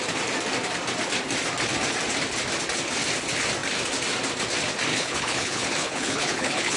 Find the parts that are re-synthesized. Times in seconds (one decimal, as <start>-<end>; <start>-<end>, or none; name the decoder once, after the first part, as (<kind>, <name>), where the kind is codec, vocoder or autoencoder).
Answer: 4.9-6.8 (codec, HILCodec)